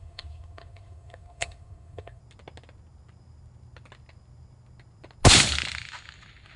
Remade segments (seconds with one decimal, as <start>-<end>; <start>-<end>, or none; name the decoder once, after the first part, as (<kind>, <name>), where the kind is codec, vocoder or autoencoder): 0.0-2.2 (codec, SNAC)